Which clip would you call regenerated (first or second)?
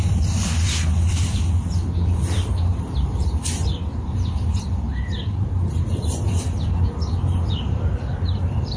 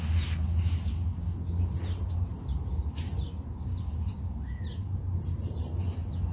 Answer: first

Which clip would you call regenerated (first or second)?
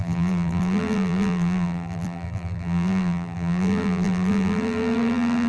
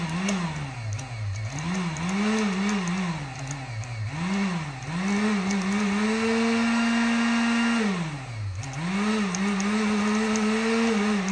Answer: first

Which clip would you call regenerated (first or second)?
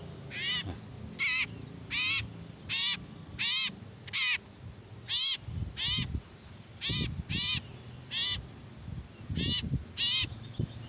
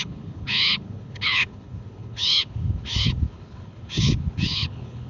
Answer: second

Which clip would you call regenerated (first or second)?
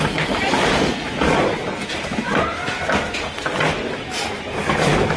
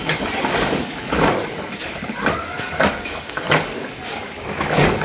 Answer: second